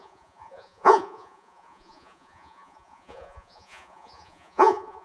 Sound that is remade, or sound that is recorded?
remade